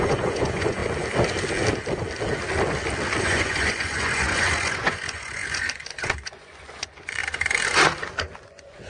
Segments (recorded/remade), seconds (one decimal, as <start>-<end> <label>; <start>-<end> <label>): 0.0-0.8 remade; 0.8-3.2 recorded; 3.2-7.2 remade; 7.2-8.5 recorded; 8.5-8.9 remade